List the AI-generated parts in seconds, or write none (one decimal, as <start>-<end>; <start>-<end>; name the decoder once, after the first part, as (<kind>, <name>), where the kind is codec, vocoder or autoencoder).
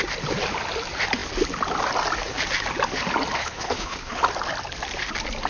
3.4-4.2 (codec, HILCodec)